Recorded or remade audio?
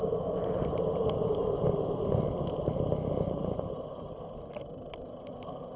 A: recorded